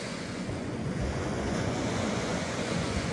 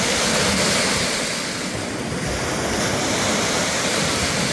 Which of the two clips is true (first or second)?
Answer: second